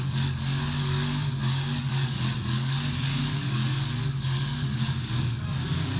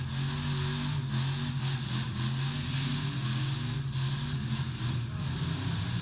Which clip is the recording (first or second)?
second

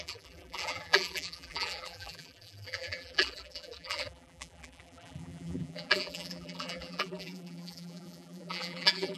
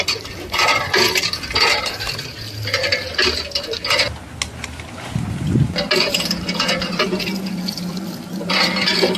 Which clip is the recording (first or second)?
second